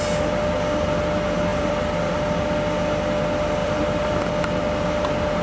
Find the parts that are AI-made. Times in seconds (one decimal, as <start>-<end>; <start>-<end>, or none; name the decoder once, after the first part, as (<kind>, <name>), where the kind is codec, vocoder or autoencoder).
1.5-2.1 (vocoder, BigVGAN v2); 3.6-4.3

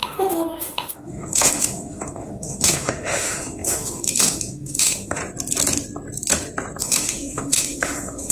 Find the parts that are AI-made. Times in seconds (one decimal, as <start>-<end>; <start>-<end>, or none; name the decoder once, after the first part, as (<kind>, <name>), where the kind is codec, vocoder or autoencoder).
0.0-5.2 (autoencoder, DAC-VAE); 6.8-8.3